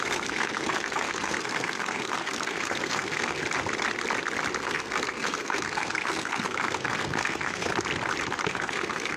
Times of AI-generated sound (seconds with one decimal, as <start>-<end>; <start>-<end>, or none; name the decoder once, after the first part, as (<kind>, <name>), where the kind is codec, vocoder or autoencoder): 0.0-3.4 (codec, SNAC); 4.6-7.7; 8.5-9.2

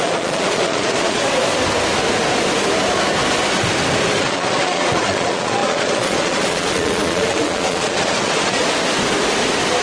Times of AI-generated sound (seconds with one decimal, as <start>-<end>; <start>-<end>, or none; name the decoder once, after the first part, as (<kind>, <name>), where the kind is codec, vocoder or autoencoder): 0.0-1.2 (vocoder, Vocos); 4.2-8.6